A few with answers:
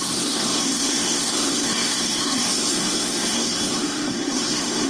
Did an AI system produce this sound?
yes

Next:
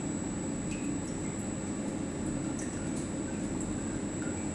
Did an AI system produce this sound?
no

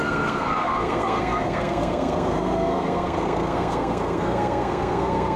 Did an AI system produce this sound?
yes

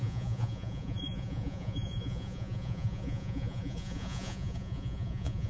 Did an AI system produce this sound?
yes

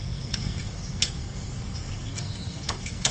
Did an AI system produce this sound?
yes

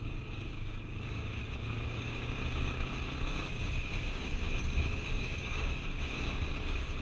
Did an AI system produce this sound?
yes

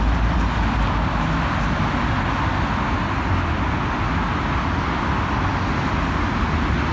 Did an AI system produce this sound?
no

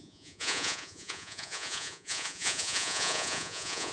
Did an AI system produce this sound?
yes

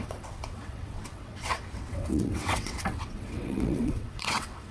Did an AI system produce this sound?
yes